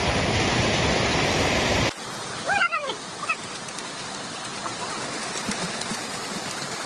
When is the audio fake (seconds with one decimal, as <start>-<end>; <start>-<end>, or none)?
none